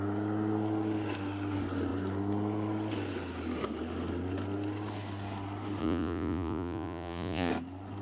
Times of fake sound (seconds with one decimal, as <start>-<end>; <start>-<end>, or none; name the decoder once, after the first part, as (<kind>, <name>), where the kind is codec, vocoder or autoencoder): 5.8-7.5 (vocoder, Vocos)

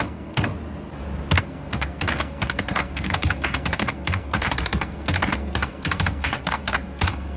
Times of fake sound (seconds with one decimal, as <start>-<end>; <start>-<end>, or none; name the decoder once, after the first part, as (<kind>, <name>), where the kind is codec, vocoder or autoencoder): 0.0-0.5 (codec, SNAC); 1.4-7.4

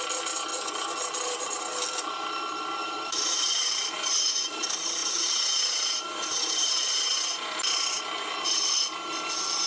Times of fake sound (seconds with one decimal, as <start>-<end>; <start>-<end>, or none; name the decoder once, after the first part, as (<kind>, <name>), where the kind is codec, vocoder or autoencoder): 2.8-4.1 (vocoder, BigVGAN v2); 5.0-7.1

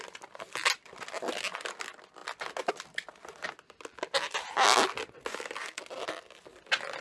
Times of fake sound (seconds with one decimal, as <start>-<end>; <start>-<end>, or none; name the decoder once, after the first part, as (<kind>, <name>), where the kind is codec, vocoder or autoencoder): 5.3-5.8 (codec, DAC)